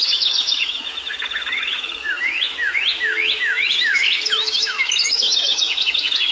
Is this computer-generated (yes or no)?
yes